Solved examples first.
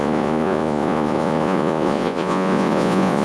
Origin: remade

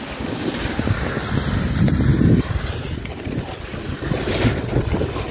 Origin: recorded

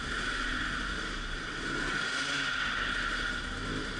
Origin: recorded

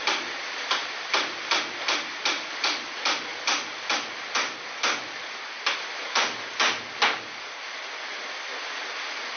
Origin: recorded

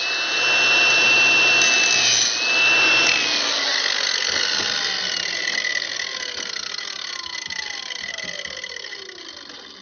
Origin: recorded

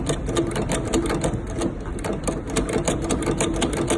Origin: recorded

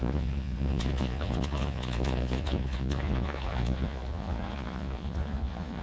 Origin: remade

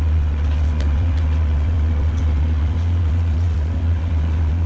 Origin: remade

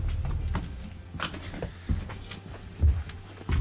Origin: recorded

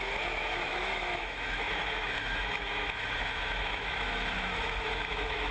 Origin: remade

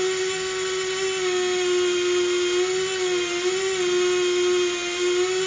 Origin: recorded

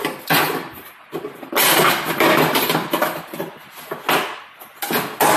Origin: recorded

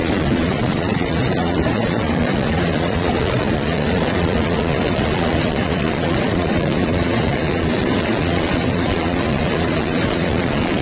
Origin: remade